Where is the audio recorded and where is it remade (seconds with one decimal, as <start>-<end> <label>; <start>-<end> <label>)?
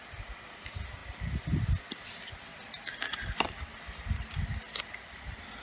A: 0.0-3.7 remade; 3.7-4.8 recorded; 4.8-5.6 remade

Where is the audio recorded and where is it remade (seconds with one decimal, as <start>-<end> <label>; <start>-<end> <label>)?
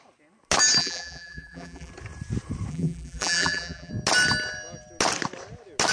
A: 0.0-0.8 recorded; 0.8-1.9 remade; 1.9-2.7 recorded; 2.7-3.9 remade; 3.9-5.9 recorded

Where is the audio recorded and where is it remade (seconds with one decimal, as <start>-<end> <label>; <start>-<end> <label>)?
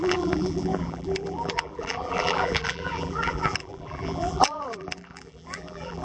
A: 0.0-6.0 remade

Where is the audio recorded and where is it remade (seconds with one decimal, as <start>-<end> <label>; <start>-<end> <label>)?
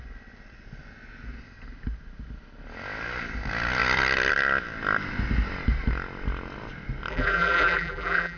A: 0.0-7.1 recorded; 7.1-8.4 remade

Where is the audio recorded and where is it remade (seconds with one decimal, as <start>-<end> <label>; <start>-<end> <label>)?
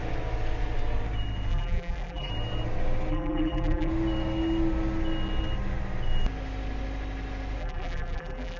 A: 0.0-1.5 recorded; 1.5-2.3 remade; 2.3-3.1 recorded; 3.1-3.9 remade; 3.9-7.6 recorded; 7.6-8.6 remade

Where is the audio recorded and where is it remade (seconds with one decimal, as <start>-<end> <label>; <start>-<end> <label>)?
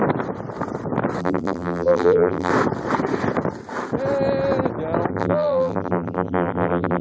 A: 0.0-1.2 recorded; 1.2-2.5 remade; 2.5-5.1 recorded; 5.1-7.0 remade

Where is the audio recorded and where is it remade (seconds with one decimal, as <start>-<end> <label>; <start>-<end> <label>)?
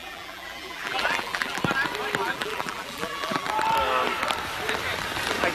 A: 0.0-1.6 remade; 1.6-2.2 recorded; 2.2-3.5 remade; 3.5-5.5 recorded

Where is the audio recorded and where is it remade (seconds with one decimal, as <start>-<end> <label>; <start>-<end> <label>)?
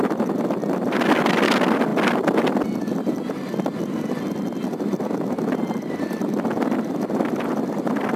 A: 0.0-8.2 recorded